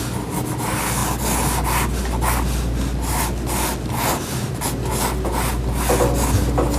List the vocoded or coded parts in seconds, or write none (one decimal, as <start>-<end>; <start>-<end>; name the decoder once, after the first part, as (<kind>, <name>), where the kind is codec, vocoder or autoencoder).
none